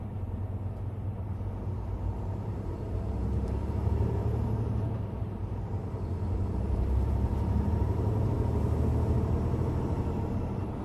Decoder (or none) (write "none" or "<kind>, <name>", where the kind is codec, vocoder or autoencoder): vocoder, BigVGAN v2